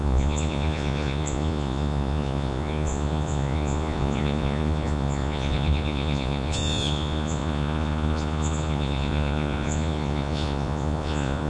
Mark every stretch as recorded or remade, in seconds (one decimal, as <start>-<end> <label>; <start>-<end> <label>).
0.0-11.5 remade